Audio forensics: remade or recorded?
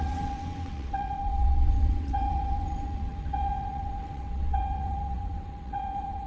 remade